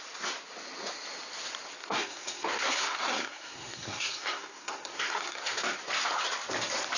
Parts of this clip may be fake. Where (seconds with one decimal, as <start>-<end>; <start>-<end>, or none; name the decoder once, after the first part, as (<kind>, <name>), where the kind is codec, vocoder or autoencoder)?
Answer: 1.8-5.6 (codec, SNAC)